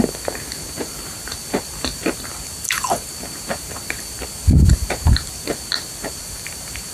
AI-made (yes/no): yes